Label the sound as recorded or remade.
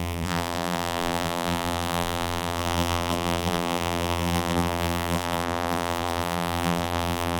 remade